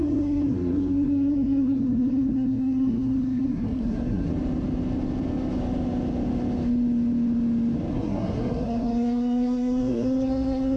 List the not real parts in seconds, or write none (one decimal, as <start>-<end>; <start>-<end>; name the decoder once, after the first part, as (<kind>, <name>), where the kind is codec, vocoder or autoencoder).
0.0-4.3 (codec, SNAC); 7.9-10.8